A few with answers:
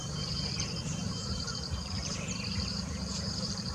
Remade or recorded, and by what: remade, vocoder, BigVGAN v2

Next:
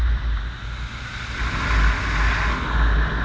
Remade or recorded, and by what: recorded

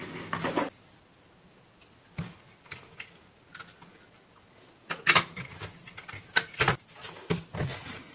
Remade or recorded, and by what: recorded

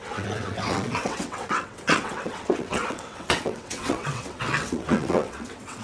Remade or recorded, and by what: remade, vocoder, WaveNeXt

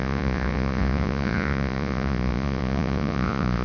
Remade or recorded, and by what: remade, vocoder, Vocos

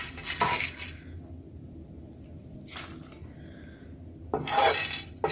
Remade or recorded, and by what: recorded